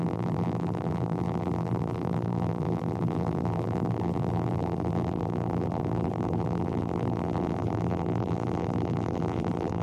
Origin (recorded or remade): remade